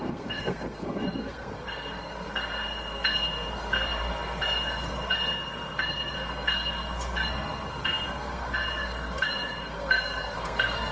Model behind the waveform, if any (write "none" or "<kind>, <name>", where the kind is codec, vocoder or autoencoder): codec, SNAC